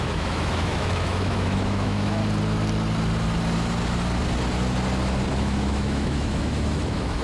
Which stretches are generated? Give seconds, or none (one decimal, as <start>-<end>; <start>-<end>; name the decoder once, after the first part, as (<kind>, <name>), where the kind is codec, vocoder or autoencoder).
0.0-2.2 (autoencoder, DAC-VAE); 5.3-7.2